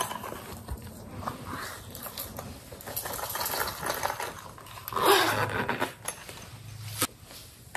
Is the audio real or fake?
real